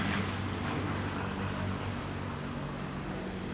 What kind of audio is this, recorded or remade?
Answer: recorded